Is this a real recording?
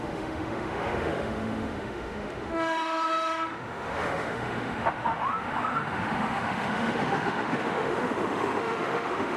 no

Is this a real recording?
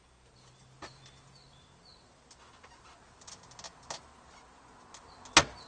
yes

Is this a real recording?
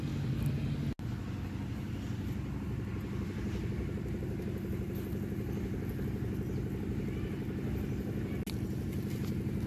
yes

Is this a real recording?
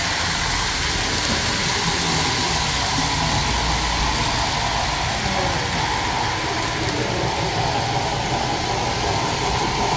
yes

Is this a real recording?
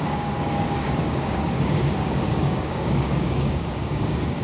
no